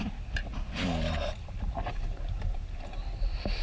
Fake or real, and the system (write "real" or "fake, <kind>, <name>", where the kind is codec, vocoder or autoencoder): real